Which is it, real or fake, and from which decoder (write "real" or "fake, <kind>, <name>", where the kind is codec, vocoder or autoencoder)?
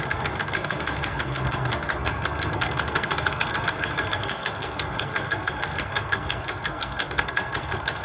fake, codec, SNAC